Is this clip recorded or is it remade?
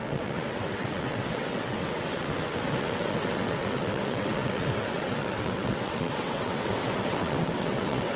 remade